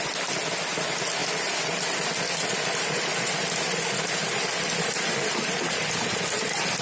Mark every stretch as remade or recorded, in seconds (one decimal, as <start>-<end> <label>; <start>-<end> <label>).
0.0-6.8 recorded